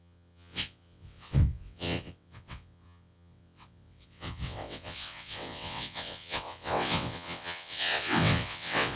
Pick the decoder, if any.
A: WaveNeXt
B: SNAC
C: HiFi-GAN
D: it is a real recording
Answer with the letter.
A